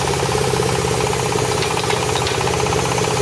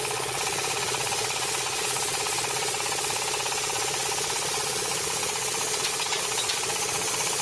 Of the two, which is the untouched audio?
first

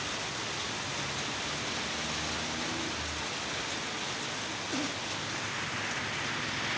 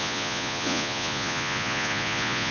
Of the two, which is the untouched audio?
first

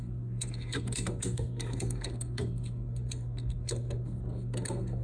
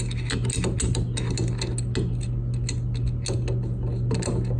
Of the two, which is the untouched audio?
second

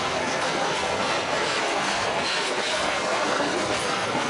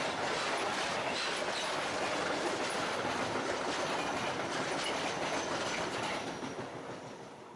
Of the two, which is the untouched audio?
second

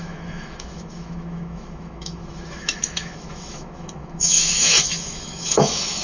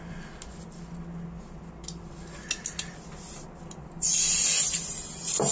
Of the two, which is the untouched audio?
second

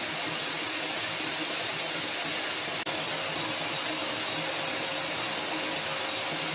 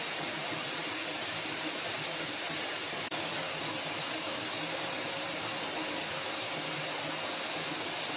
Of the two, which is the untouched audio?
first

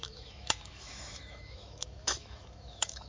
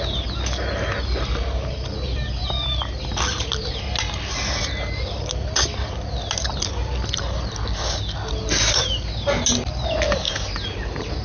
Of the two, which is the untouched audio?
second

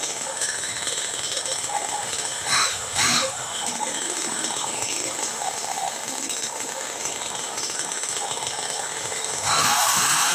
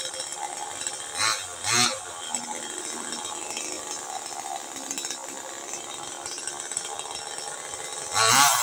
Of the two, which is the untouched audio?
second